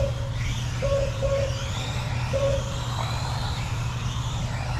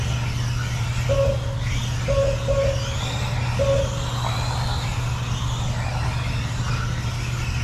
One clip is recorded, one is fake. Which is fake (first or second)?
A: first